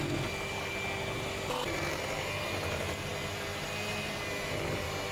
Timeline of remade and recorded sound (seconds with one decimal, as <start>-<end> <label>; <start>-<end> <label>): 0.0-5.1 recorded